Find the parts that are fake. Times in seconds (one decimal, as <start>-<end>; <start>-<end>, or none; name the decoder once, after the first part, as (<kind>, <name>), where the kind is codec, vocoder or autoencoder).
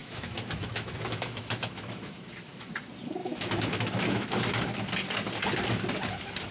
0.0-2.7 (autoencoder, DAC-VAE); 3.2-4.3